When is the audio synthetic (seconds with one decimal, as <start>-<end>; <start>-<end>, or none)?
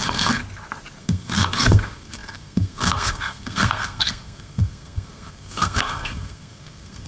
0.0-0.4; 1.0-7.1